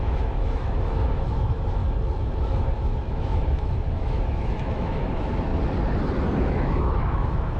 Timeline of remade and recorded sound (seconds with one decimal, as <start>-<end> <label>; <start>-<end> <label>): 0.0-1.8 remade; 1.8-2.4 recorded; 2.4-5.5 remade; 5.5-6.4 recorded; 6.4-7.6 remade